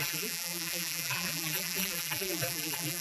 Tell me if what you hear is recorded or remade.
remade